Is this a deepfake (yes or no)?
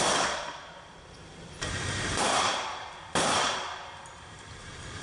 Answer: yes